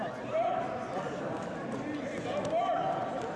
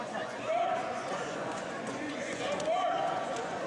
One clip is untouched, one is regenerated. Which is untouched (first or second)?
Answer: first